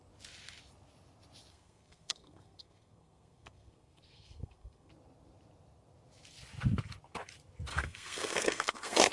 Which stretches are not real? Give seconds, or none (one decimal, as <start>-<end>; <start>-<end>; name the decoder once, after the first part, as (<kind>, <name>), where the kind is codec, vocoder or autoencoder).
1.5-4.9 (codec, SNAC); 7.7-9.1